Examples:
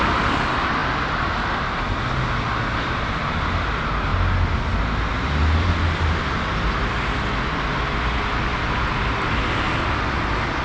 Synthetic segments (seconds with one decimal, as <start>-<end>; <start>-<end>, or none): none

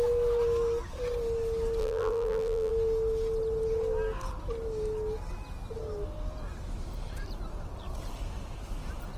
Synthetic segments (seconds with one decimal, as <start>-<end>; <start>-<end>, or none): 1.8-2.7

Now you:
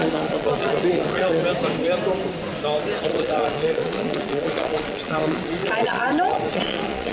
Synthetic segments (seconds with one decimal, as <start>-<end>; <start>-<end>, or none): 0.0-1.4; 3.0-7.1

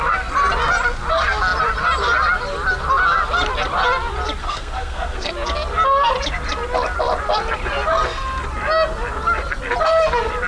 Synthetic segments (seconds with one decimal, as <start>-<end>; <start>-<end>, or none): 4.4-5.3

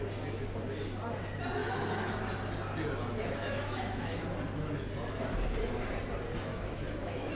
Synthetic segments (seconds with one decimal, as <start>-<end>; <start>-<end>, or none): 1.6-2.2; 3.2-4.2; 6.5-7.3